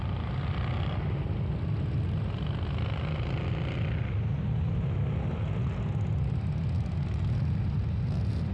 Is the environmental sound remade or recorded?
recorded